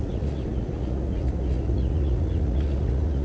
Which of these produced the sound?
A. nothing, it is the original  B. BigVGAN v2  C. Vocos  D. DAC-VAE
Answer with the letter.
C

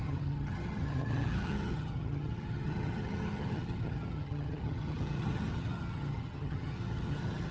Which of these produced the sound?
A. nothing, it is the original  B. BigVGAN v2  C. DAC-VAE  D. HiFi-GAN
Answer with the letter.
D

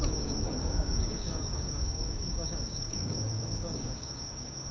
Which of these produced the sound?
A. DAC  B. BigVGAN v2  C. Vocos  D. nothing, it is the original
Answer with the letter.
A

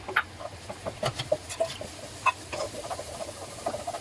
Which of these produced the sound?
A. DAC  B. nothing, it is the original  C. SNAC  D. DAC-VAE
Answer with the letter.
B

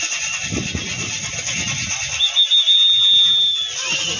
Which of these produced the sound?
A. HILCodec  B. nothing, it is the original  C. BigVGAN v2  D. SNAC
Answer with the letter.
B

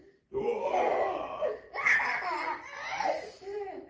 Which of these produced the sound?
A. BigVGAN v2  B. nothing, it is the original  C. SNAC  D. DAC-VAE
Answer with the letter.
B